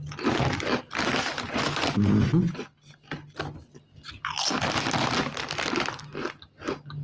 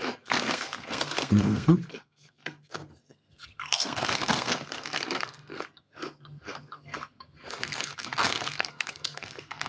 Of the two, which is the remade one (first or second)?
second